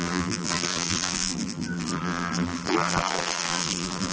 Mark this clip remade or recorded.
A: remade